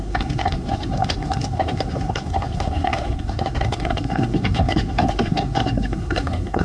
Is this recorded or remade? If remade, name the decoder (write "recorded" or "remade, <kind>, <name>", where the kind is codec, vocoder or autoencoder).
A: remade, codec, SNAC